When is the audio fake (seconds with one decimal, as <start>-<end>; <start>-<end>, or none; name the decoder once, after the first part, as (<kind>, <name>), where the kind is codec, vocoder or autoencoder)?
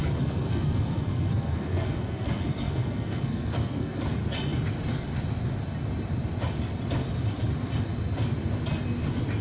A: 0.0-4.0 (codec, SNAC)